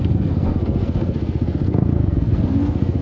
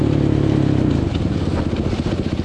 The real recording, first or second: second